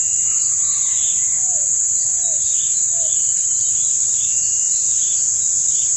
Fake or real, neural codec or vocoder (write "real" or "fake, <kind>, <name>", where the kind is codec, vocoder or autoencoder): real